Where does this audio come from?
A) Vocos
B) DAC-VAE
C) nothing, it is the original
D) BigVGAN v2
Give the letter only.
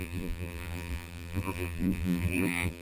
D